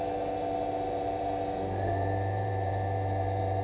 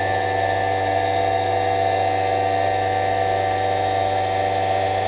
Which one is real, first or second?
second